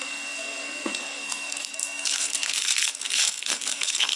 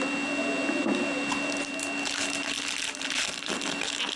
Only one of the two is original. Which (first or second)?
second